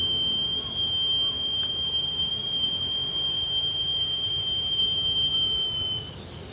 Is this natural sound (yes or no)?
yes